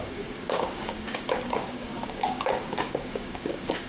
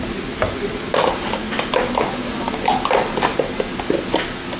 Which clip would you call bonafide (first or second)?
second